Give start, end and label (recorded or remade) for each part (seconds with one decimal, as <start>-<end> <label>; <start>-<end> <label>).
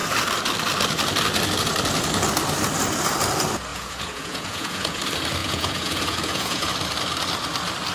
0.0-3.7 recorded; 3.7-5.0 remade; 5.0-5.4 recorded; 5.4-6.7 remade; 6.7-7.9 recorded